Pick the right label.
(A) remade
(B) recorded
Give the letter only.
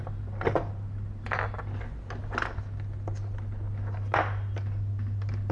B